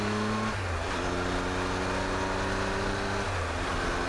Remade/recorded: recorded